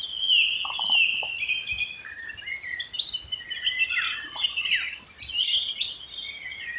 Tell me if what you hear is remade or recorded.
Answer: recorded